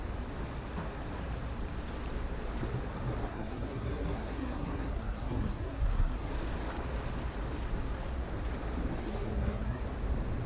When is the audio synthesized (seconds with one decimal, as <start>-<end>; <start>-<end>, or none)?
3.3-6.3; 9.0-9.8